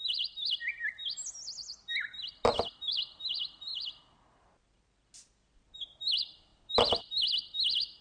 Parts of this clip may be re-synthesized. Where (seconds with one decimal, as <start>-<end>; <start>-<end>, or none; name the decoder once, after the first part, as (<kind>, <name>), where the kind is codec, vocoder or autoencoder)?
none